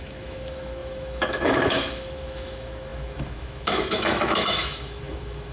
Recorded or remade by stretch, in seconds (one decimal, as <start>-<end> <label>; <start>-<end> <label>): 0.0-5.5 remade